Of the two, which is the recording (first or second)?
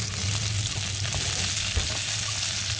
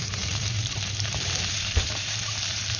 first